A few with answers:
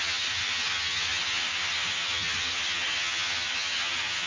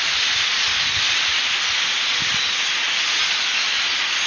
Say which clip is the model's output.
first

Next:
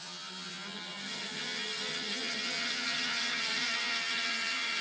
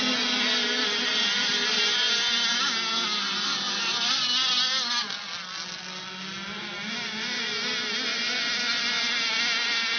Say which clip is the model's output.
first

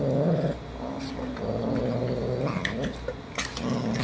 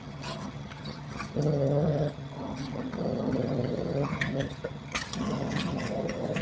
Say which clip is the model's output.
second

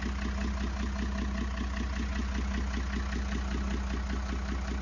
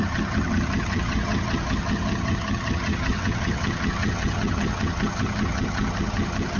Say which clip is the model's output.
second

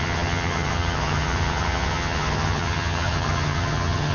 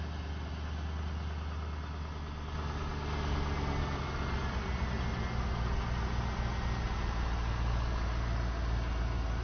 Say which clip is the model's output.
first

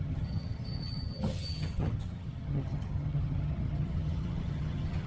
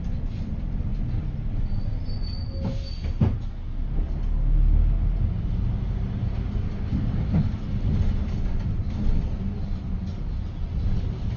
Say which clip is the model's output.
first